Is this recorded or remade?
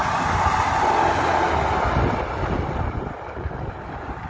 recorded